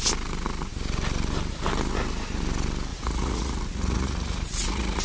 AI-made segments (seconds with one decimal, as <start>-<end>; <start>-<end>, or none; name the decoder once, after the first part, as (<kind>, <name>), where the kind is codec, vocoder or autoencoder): 2.9-5.0 (vocoder, Vocos)

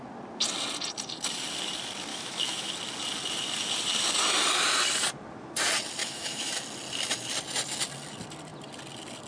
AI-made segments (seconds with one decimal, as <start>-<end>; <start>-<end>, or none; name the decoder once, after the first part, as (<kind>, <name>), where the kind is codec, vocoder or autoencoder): 2.1-2.7 (autoencoder, DAC-VAE); 6.0-6.5

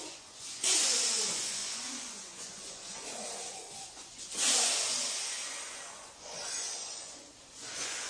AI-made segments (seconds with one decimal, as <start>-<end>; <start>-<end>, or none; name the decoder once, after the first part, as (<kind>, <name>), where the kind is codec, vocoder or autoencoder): 0.0-8.1 (vocoder, Vocos)

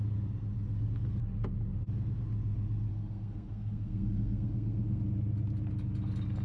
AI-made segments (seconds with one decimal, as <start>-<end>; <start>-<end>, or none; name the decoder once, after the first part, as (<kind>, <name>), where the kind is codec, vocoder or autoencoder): 2.9-5.0 (codec, SNAC)

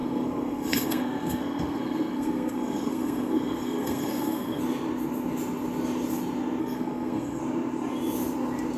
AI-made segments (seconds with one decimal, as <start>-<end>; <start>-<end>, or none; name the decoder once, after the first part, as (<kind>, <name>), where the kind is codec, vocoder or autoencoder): 0.0-4.6 (codec, SNAC); 6.6-7.4